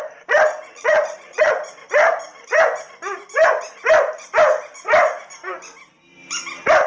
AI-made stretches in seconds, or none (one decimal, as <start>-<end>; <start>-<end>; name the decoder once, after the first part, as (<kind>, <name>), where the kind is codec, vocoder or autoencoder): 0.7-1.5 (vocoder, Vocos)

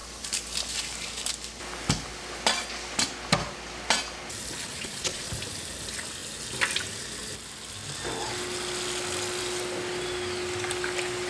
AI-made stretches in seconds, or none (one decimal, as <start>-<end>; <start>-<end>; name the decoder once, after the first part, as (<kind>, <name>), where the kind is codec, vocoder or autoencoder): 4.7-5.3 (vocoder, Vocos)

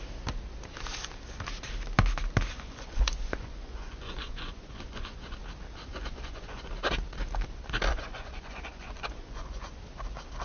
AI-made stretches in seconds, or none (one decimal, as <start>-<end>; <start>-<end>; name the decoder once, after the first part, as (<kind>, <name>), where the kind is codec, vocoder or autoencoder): 2.5-5.4 (vocoder, Vocos); 5.9-6.7; 7.9-9.8

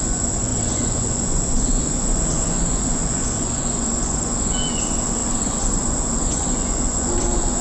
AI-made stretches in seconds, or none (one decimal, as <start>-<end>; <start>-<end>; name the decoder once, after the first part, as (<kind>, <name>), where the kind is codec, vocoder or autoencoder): 0.0-7.6 (vocoder, Vocos)

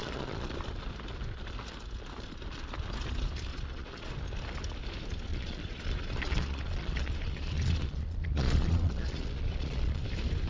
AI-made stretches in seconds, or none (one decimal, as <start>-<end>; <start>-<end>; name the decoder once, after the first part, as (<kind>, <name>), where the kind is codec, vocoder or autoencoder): 0.0-0.5 (vocoder, Vocos); 3.5-4.1; 5.3-10.0

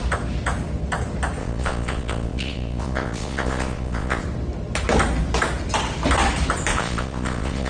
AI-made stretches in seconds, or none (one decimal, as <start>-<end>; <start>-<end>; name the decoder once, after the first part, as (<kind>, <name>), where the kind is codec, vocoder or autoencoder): 1.4-4.2 (vocoder, Vocos); 6.7-7.7